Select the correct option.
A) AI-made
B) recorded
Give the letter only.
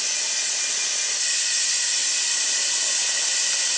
B